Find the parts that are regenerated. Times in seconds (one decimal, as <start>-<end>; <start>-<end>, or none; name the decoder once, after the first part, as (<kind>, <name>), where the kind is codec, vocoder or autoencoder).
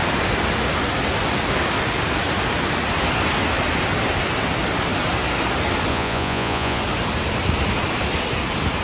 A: 5.9-6.8 (vocoder, Vocos)